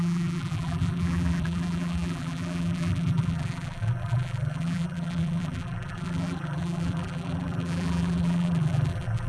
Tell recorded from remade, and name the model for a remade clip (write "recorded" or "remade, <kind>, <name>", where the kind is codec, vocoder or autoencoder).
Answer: remade, vocoder, BigVGAN v2